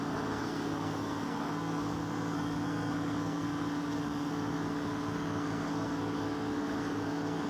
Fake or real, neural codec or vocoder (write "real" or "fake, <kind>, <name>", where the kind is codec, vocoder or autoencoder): fake, codec, SNAC